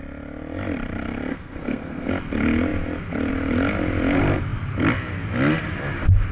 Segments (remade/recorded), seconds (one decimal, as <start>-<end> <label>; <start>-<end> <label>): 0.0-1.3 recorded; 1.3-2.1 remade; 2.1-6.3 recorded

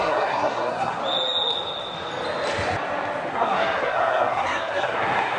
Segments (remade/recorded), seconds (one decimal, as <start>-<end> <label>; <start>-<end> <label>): 0.0-1.0 remade; 1.0-3.3 recorded; 3.3-5.4 remade

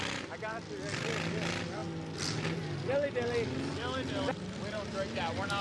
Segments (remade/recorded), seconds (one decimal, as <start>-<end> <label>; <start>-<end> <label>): 0.0-1.8 remade; 1.8-4.1 recorded; 4.1-5.6 remade

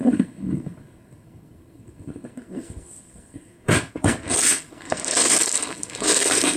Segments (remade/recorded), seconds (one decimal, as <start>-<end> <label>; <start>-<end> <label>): 0.0-6.6 remade

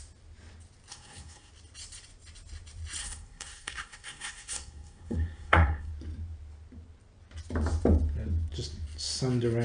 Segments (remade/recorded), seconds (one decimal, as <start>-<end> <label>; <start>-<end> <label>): 0.0-0.9 recorded; 0.9-1.5 remade; 1.5-3.0 recorded; 3.0-5.9 remade; 5.9-9.6 recorded

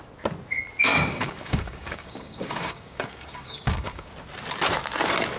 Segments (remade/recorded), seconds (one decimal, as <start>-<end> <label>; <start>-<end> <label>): 0.0-0.9 recorded; 0.9-4.1 remade; 4.1-5.4 recorded

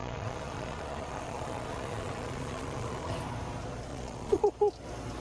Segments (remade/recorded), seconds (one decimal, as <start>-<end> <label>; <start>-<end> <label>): 0.0-3.1 remade; 3.1-3.9 recorded; 3.9-4.4 remade; 4.4-5.2 recorded